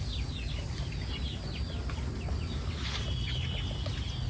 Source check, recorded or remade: recorded